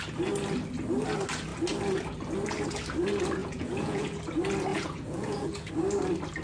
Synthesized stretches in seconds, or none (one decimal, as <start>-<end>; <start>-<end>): 3.4-4.2; 4.7-5.7